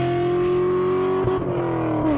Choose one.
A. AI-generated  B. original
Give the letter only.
B